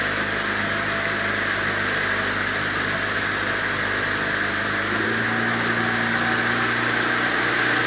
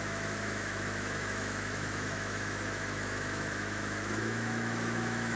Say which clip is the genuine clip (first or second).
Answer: first